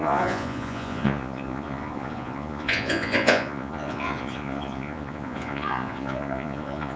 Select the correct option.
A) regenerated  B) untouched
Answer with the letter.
A